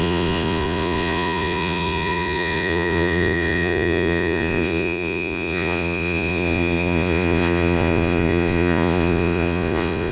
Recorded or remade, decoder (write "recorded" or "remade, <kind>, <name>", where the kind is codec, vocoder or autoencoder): remade, vocoder, Vocos